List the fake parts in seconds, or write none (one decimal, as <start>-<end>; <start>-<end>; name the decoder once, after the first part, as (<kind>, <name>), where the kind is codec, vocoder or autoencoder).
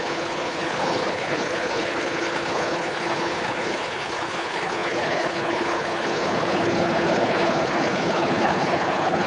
0.0-9.3 (codec, HILCodec)